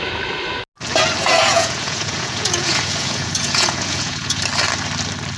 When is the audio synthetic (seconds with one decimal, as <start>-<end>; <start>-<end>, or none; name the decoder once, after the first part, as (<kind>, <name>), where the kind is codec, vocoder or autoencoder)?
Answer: 1.2-4.4 (vocoder, Vocos)